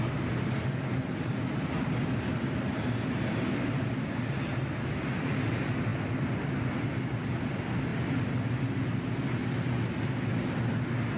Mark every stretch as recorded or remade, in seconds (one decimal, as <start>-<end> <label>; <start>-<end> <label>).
0.0-11.2 recorded

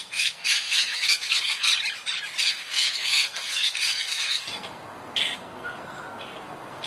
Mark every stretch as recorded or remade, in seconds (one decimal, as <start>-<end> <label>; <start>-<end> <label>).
0.0-1.7 remade; 1.7-2.4 recorded; 2.4-6.9 remade

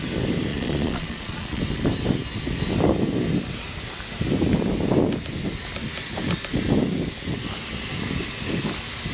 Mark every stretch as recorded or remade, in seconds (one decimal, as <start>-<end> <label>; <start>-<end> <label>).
0.0-0.5 recorded; 0.5-1.6 remade; 1.6-9.1 recorded

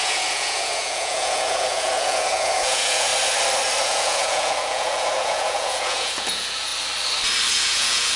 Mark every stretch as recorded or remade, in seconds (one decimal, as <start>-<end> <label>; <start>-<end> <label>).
0.0-3.1 remade; 3.1-3.8 recorded; 3.8-6.7 remade; 6.7-7.5 recorded; 7.5-8.2 remade

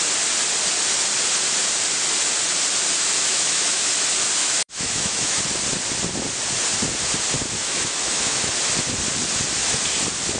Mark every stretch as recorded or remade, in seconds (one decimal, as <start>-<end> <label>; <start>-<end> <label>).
0.0-3.3 recorded; 3.3-3.9 remade; 3.9-4.4 recorded; 4.4-5.4 remade; 5.4-7.6 recorded; 7.6-8.5 remade; 8.5-10.4 recorded

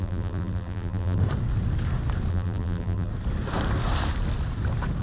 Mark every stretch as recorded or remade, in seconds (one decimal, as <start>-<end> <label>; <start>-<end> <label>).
0.0-1.2 remade; 1.2-2.3 recorded; 2.3-3.1 remade; 3.1-5.0 recorded

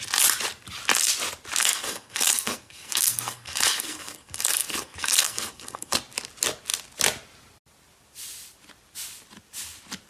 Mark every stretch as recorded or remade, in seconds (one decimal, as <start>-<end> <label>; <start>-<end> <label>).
0.0-1.6 recorded; 1.6-6.0 remade; 6.0-10.1 recorded